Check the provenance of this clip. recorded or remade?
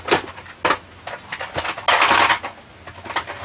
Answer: recorded